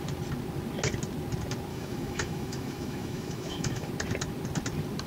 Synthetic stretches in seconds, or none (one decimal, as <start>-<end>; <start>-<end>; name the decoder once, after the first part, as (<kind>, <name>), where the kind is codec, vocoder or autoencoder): 1.7-3.9 (autoencoder, DAC-VAE)